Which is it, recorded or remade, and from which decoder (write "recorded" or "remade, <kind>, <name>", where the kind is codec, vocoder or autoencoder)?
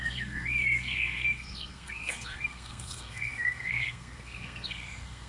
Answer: remade, codec, SNAC